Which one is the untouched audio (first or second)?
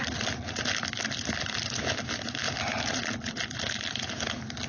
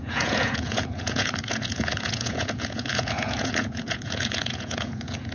first